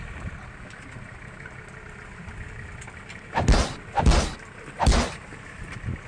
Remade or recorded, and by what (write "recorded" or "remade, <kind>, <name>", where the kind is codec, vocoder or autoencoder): recorded